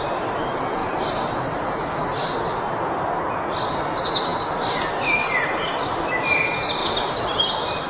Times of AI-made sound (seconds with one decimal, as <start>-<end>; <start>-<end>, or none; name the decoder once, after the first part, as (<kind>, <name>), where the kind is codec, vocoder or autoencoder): none